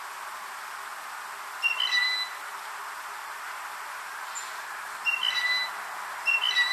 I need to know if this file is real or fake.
real